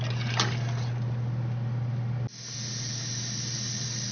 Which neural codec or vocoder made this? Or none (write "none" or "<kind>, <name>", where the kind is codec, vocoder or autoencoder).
none